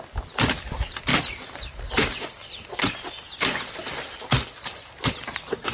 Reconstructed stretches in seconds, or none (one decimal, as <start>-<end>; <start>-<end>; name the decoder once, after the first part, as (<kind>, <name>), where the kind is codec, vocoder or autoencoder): none